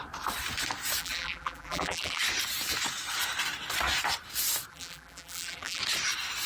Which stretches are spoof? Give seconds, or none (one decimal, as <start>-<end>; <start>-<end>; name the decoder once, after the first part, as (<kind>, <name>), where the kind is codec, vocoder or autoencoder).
1.0-2.2 (vocoder, BigVGAN v2); 4.7-5.8